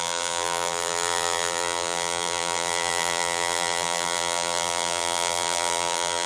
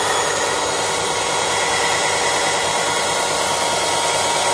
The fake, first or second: first